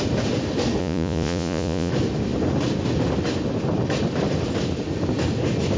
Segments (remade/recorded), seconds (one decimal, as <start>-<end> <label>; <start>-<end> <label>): 0.0-0.8 recorded; 0.8-1.9 remade; 1.9-5.8 recorded